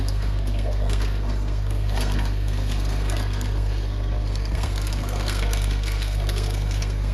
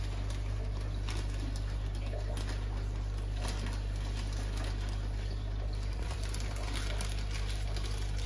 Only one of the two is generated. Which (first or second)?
first